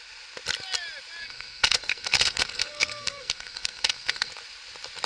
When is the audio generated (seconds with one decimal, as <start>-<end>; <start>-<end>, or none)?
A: 1.2-4.3